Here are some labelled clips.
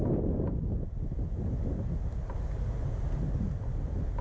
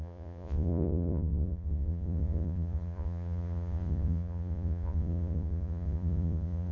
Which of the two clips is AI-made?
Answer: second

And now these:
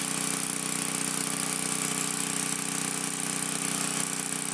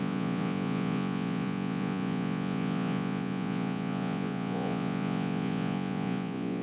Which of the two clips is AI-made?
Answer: second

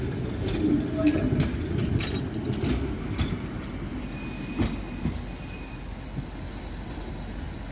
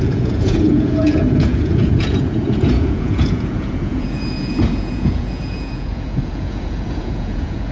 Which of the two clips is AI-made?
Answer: second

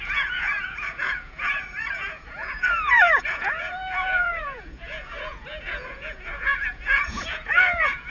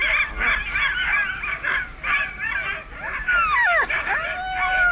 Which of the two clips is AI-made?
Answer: first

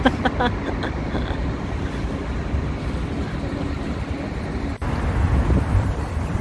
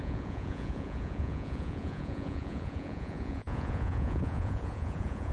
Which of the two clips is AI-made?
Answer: second